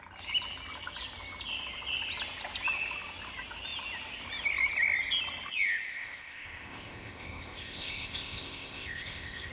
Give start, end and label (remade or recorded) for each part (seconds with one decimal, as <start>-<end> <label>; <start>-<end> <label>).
0.0-5.9 recorded; 5.9-9.5 remade